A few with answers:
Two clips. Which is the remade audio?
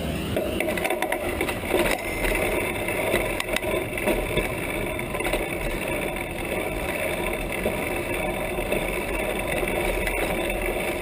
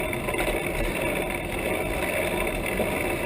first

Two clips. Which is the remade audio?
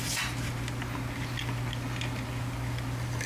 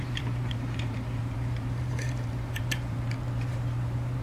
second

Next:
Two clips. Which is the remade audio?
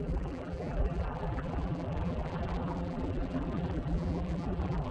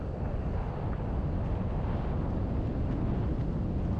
first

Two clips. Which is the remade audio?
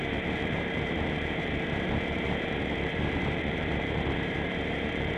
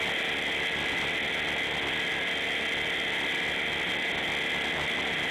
first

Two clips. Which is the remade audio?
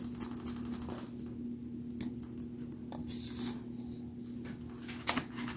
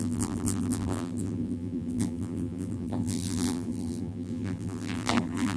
second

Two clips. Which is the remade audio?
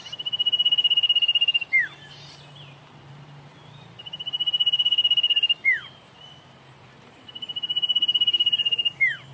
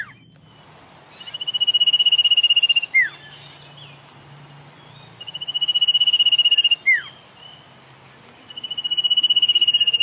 first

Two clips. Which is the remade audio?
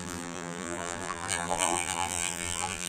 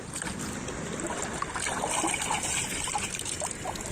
first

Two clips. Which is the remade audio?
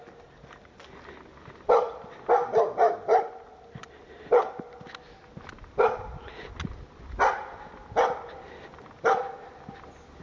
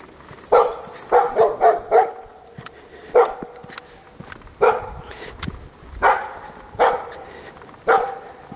second